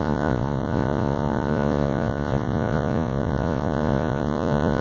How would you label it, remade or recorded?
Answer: remade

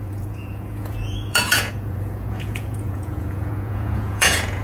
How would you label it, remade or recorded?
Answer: remade